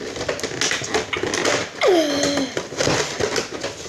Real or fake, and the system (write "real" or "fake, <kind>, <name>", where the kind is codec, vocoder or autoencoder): real